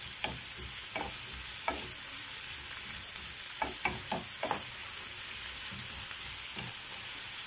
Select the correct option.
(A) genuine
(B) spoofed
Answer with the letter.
A